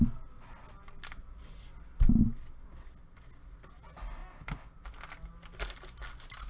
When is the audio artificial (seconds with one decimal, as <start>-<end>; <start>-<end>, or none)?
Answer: none